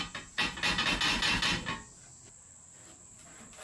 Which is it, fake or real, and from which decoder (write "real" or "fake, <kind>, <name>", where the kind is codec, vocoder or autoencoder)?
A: real